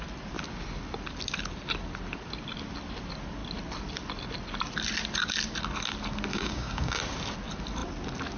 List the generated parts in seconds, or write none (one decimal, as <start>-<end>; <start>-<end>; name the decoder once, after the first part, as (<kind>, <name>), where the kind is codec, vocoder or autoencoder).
6.3-7.0 (codec, DAC)

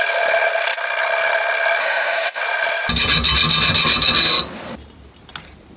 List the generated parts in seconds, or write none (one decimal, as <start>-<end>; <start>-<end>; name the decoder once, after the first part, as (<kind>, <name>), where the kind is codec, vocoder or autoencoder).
1.8-2.4 (autoencoder, DAC-VAE)

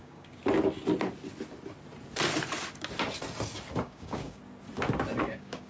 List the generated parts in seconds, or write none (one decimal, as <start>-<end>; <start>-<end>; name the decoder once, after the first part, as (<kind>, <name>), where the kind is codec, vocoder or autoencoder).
0.0-0.4 (codec, DAC); 3.8-4.4; 5.2-5.7

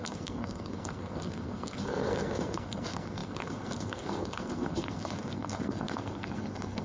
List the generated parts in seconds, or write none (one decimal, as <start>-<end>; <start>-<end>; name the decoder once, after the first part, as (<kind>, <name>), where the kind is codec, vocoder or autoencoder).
0.0-6.8 (codec, SNAC)

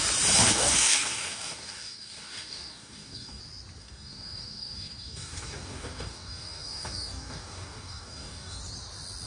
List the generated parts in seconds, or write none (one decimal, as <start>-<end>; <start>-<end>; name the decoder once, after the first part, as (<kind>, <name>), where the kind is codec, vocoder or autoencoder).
0.4-3.4 (codec, DAC); 3.8-8.6